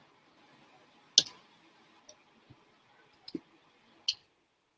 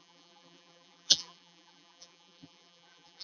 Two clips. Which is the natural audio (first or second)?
first